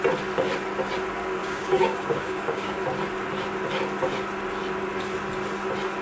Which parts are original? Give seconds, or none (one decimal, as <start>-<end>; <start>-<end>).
0.0-1.4; 2.8-6.0